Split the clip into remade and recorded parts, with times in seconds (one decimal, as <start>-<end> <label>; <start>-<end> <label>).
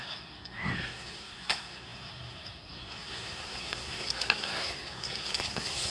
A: 0.0-5.9 remade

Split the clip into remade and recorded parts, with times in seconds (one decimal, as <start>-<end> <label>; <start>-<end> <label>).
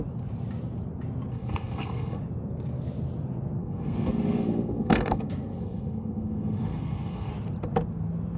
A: 0.0-1.3 recorded; 1.3-2.2 remade; 2.2-3.6 recorded; 3.6-7.3 remade; 7.3-8.4 recorded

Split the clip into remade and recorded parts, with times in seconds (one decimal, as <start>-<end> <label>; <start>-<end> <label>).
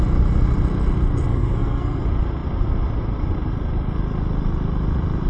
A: 0.0-1.3 recorded; 1.3-2.0 remade; 2.0-5.3 recorded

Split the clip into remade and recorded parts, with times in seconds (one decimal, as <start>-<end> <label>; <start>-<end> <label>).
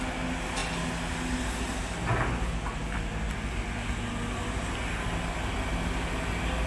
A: 0.0-6.7 recorded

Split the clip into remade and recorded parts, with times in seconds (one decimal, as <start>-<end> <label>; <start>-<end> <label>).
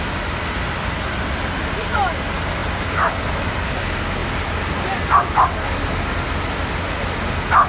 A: 0.0-7.7 recorded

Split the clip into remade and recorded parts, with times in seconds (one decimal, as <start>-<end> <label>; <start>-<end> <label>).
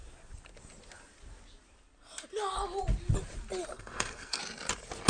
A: 0.0-3.7 recorded; 3.7-4.4 remade; 4.4-5.1 recorded